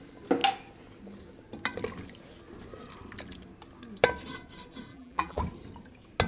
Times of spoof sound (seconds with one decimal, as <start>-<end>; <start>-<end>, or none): 4.9-5.4